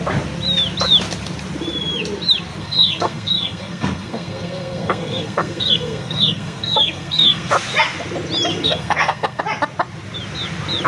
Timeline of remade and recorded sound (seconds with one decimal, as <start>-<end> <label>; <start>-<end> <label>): 0.0-2.6 recorded; 2.6-7.5 remade; 7.5-8.5 recorded; 8.5-9.4 remade; 9.4-10.9 recorded